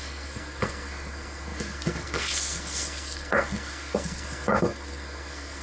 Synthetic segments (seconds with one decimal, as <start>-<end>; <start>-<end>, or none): 0.0-5.6